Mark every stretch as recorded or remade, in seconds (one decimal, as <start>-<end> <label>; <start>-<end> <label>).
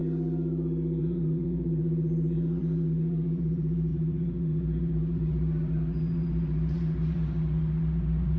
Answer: 0.0-1.0 recorded; 1.0-8.4 remade